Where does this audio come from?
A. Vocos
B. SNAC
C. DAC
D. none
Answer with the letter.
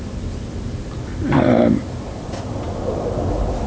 D